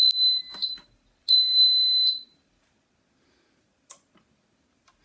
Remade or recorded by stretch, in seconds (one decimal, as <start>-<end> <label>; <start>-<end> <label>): 0.0-5.0 recorded